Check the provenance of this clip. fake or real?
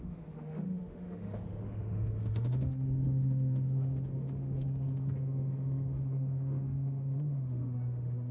fake